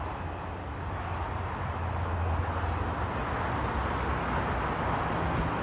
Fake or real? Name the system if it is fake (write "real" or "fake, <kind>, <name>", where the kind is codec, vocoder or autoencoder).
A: real